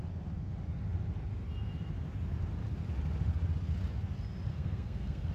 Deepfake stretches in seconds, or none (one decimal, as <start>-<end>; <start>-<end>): 4.5-5.3